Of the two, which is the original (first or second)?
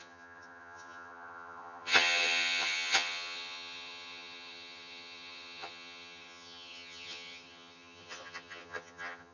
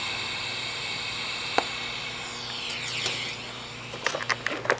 second